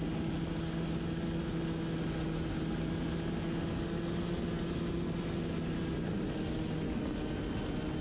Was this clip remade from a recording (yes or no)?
no